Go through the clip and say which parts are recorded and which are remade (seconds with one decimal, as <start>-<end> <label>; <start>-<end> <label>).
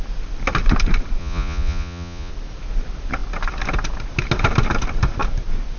0.0-1.2 recorded; 1.2-2.3 remade; 2.3-5.8 recorded